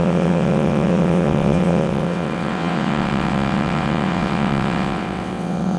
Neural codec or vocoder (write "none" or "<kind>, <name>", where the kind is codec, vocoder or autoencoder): vocoder, WaveNeXt